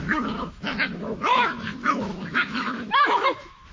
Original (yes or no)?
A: no